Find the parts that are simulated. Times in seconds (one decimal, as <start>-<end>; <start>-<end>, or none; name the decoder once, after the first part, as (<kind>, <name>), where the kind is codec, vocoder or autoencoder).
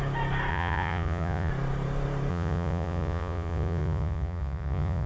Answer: 0.5-1.5 (vocoder, Vocos); 2.3-5.1